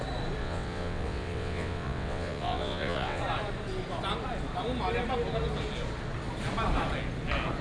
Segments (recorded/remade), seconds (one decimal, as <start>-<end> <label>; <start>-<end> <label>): 0.0-0.4 recorded; 0.4-3.2 remade; 3.2-7.6 recorded